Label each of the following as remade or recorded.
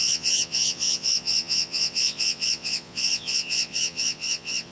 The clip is remade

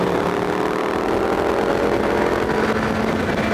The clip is recorded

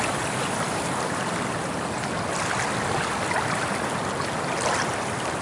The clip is recorded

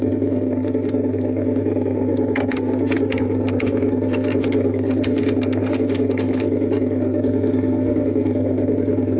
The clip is remade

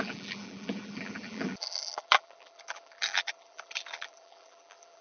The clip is remade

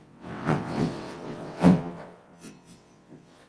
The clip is remade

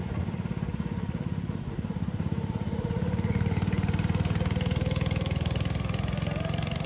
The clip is recorded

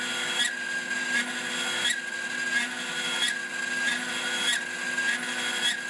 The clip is recorded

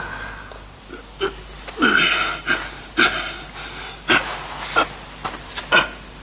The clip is recorded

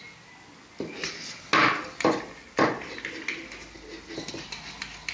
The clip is recorded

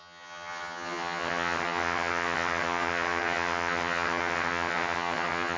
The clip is remade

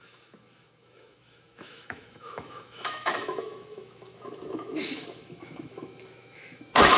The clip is remade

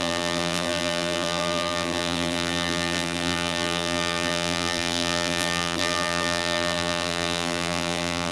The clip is remade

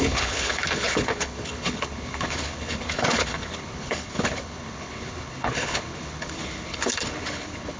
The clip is remade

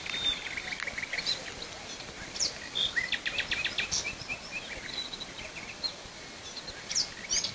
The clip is recorded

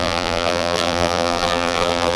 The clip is remade